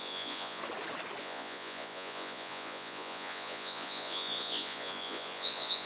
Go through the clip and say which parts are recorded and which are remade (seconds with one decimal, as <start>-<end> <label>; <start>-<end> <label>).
0.0-0.6 remade; 0.6-1.2 recorded; 1.2-5.9 remade